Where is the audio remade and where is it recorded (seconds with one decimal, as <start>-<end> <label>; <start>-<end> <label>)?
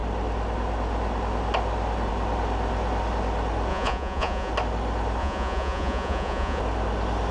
0.0-3.7 recorded; 3.7-4.5 remade; 4.5-5.2 recorded; 5.2-6.6 remade; 6.6-7.3 recorded